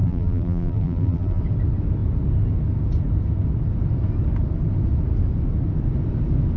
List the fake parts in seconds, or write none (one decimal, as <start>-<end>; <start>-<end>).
0.0-1.4